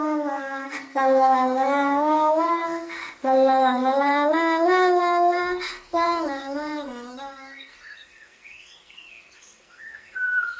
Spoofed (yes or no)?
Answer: yes